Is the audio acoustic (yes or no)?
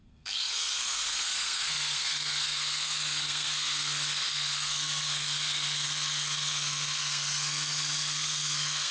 no